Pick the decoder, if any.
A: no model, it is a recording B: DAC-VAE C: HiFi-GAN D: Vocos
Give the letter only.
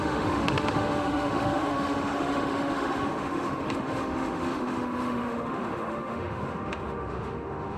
B